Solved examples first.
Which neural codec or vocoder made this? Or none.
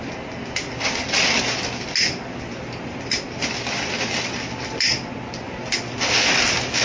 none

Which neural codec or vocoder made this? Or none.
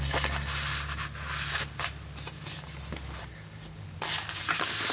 none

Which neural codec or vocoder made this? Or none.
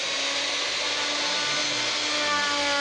none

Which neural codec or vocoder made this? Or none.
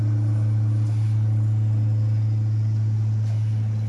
none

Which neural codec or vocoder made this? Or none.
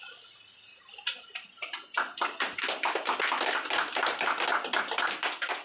none